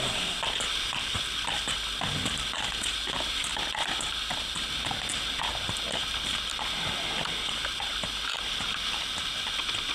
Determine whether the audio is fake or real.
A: real